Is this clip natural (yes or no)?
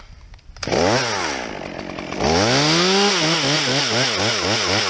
yes